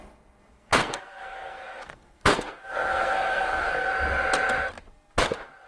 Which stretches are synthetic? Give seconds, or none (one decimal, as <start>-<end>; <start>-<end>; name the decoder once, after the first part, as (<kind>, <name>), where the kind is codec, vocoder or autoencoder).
0.5-3.9 (codec, SNAC)